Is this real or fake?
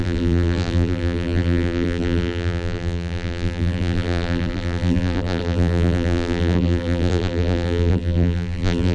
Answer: fake